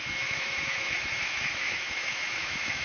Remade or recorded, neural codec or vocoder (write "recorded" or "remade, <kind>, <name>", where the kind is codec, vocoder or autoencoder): remade, autoencoder, DAC-VAE